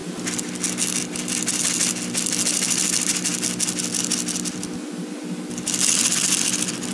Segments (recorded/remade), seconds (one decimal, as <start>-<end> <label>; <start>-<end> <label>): 0.0-6.9 recorded